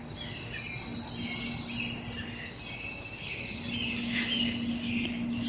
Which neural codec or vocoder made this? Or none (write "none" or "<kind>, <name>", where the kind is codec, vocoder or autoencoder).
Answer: none